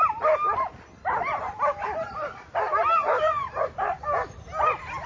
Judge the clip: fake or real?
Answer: real